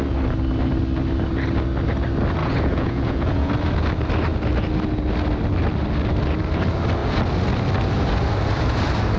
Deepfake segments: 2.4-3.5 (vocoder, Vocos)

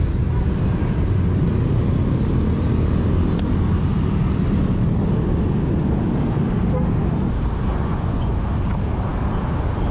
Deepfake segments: 7.7-8.3 (vocoder, Vocos)

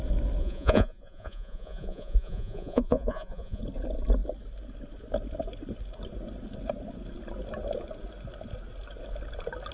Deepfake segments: 0.4-3.6 (vocoder, Vocos)

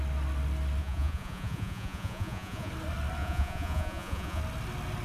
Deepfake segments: 0.8-2.7 (vocoder, Vocos); 3.2-4.4